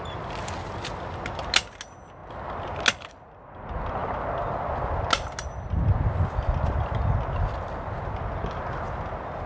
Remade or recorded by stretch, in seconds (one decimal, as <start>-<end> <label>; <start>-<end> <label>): 0.0-9.5 recorded